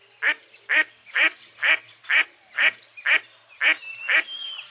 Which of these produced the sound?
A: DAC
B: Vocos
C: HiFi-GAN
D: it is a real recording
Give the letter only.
D